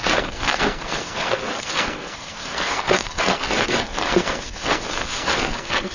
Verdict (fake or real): fake